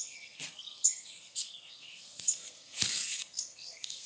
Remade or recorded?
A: remade